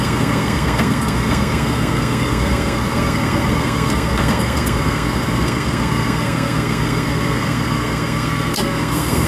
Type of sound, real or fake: fake